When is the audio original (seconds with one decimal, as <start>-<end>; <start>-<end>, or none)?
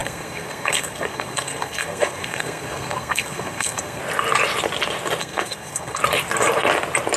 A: 4.0-5.2; 6.0-7.2